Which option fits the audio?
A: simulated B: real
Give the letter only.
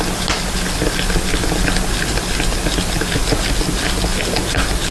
B